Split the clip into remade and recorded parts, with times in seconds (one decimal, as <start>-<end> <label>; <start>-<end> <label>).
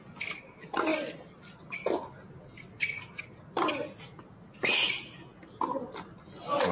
0.0-6.7 recorded